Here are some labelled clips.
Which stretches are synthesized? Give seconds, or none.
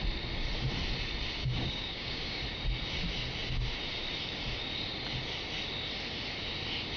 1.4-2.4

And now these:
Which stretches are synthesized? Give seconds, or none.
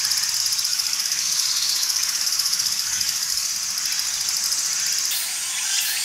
0.7-3.5